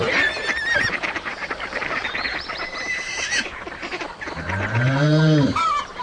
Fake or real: fake